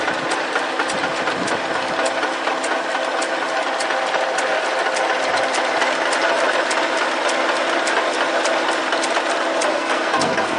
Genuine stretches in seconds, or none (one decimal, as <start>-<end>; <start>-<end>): 0.0-9.7